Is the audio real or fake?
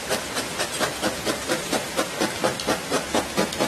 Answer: fake